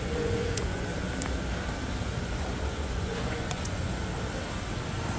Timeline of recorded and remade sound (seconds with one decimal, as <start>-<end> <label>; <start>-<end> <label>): 0.0-0.9 remade; 0.9-2.2 recorded; 2.2-4.0 remade; 4.0-5.2 recorded